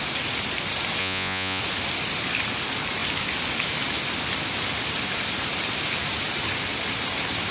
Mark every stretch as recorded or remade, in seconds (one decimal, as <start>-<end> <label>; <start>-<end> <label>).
0.0-1.0 recorded; 1.0-1.6 remade; 1.6-7.5 recorded